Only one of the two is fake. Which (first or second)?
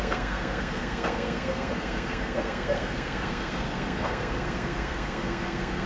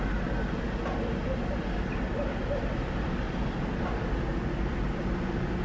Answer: first